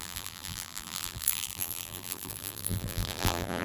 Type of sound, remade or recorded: remade